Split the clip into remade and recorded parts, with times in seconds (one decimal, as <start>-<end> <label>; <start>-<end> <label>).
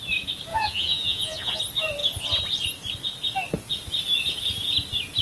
0.0-0.5 recorded; 0.5-1.6 remade; 1.6-5.2 recorded